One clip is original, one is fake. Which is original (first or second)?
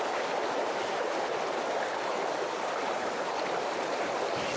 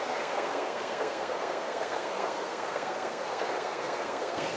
first